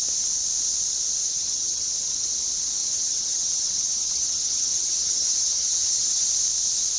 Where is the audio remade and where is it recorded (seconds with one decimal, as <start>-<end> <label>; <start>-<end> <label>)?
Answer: 0.0-1.2 recorded; 1.2-2.3 remade; 2.3-2.8 recorded; 2.8-6.3 remade; 6.3-7.0 recorded

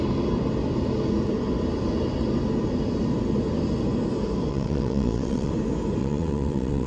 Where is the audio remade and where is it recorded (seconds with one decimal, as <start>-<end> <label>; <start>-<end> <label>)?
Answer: 0.0-4.5 recorded; 4.5-5.5 remade; 5.5-6.0 recorded; 6.0-6.9 remade

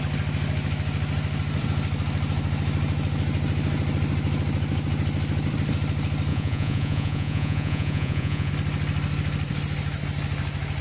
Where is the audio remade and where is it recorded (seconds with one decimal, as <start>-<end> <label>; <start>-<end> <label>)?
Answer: 0.0-6.3 recorded; 6.3-8.5 remade; 8.5-10.8 recorded